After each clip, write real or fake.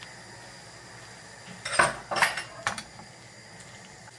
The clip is real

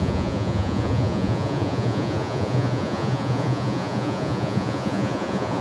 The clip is fake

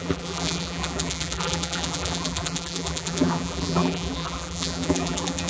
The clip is fake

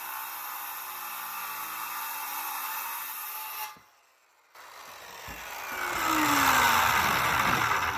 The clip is real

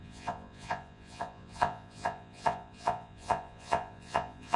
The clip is fake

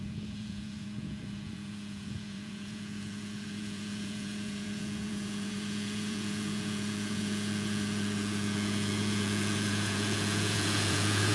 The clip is fake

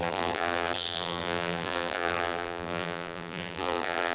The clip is fake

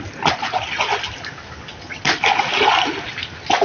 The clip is real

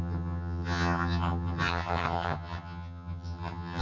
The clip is fake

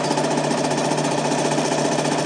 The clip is real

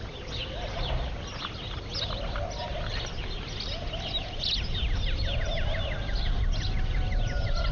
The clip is real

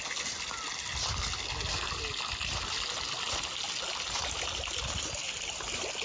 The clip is real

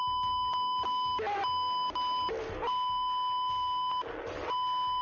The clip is real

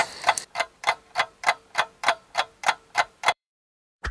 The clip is fake